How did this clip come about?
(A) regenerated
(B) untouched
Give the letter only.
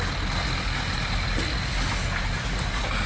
B